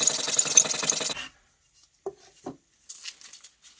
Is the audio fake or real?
real